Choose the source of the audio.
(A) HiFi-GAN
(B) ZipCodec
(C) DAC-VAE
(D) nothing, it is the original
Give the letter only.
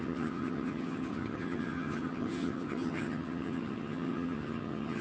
A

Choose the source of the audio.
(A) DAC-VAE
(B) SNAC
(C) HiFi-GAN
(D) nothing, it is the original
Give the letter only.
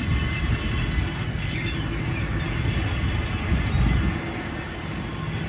D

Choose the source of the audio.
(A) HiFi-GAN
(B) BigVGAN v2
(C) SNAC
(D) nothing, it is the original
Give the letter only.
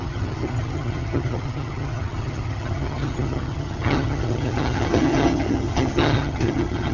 A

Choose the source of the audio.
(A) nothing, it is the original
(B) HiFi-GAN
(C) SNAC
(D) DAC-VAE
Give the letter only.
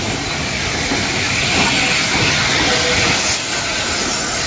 A